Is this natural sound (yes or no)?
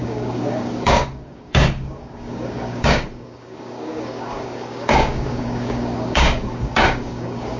no